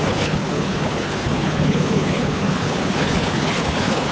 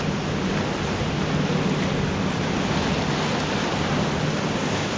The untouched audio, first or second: second